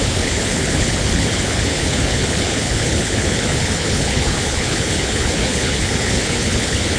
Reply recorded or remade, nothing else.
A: remade